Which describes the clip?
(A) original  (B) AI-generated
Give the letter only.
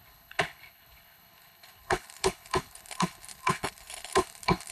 B